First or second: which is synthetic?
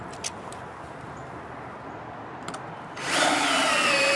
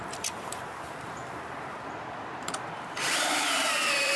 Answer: second